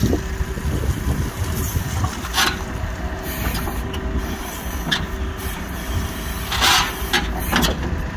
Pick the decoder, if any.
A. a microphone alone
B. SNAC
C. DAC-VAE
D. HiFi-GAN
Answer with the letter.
A